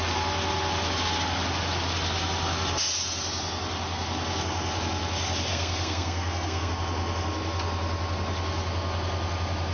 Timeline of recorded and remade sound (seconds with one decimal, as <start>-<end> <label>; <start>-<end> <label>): 0.0-5.5 recorded; 5.5-6.7 remade; 6.7-9.7 recorded